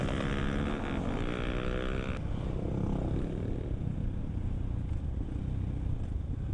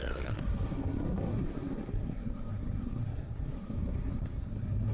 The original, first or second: first